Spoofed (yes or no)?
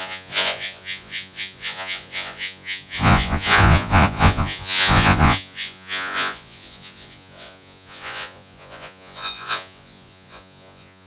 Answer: yes